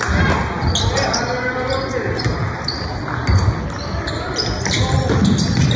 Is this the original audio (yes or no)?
yes